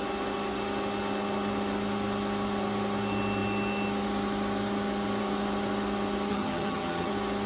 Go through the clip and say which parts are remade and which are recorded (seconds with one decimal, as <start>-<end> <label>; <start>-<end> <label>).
0.0-6.3 recorded; 6.3-7.1 remade; 7.1-7.5 recorded